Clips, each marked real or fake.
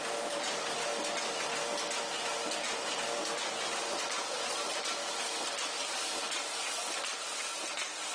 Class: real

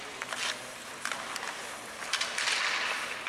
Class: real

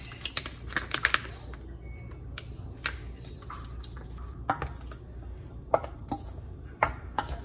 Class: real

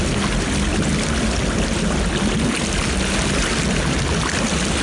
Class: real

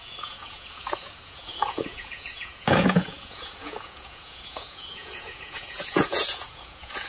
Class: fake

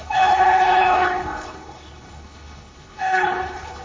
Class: fake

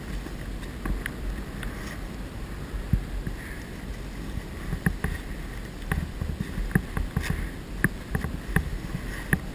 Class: real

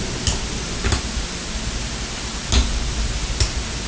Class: real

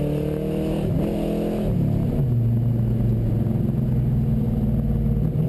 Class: real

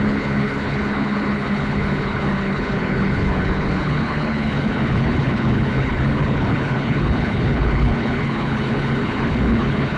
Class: fake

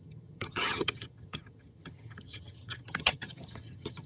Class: fake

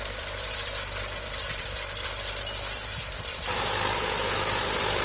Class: fake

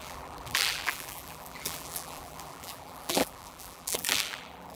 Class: fake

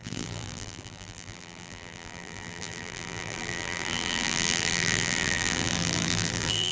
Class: fake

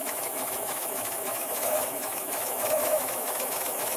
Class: fake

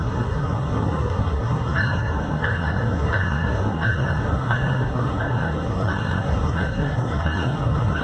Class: fake